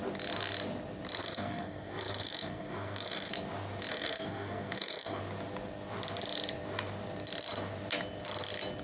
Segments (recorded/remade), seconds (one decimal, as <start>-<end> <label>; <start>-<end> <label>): 0.0-1.2 recorded; 1.2-3.3 remade; 3.3-3.9 recorded; 3.9-5.2 remade; 5.2-8.8 recorded